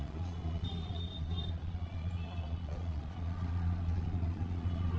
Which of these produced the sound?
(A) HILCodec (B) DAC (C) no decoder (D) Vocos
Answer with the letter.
D